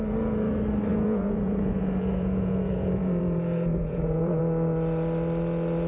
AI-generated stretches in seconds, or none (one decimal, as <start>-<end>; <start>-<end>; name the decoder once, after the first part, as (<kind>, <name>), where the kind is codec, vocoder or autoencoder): 0.9-4.4 (vocoder, Vocos)